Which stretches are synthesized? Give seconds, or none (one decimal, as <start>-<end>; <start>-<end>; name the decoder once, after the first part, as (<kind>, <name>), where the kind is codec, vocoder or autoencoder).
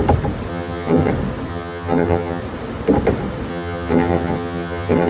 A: 0.5-1.1 (vocoder, HiFi-GAN); 1.5-2.4; 3.5-5.1